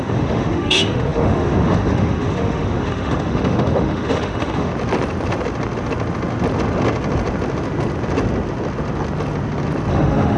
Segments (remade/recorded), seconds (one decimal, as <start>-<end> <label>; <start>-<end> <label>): 0.0-4.7 remade; 4.7-9.9 recorded; 9.9-10.4 remade